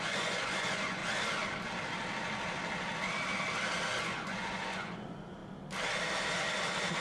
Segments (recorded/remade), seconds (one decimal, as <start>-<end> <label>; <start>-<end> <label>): 0.0-1.0 remade; 1.0-4.0 recorded; 4.0-5.4 remade; 5.4-7.0 recorded